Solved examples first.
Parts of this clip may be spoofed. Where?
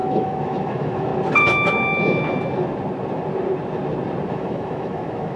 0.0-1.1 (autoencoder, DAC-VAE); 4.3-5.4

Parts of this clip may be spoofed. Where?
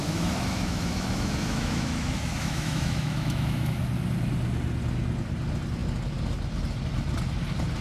0.0-3.8 (autoencoder, DAC-VAE)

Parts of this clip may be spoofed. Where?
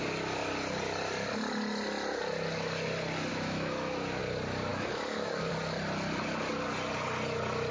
3.3-4.2 (autoencoder, DAC-VAE); 4.7-5.5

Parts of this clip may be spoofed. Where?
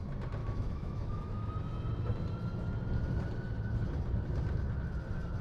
0.4-1.5 (autoencoder, DAC-VAE)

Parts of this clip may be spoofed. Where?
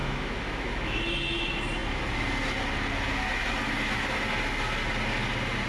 0.0-1.0 (autoencoder, DAC-VAE)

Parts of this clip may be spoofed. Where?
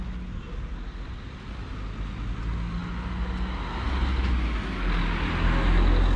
none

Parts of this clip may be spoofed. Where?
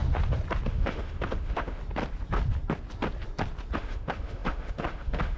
0.7-1.8 (autoencoder, DAC-VAE); 3.8-5.4